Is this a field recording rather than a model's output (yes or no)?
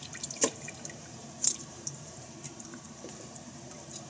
no